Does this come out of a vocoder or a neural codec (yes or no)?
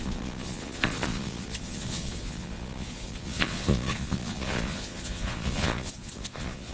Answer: yes